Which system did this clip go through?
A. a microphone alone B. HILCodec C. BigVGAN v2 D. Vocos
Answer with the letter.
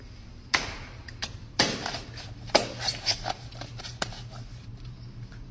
C